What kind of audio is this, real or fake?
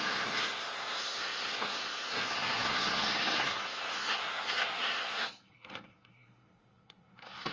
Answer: fake